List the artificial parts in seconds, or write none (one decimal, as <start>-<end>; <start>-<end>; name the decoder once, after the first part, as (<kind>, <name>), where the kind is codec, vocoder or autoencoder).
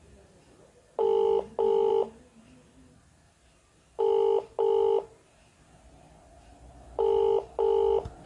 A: none